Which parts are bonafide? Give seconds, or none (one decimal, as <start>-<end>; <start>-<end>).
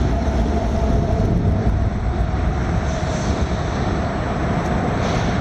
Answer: 2.6-4.8